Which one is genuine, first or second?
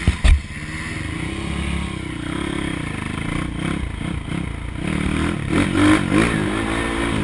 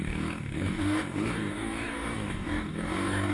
first